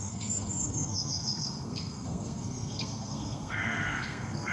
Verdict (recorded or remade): remade